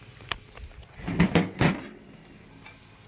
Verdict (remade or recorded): recorded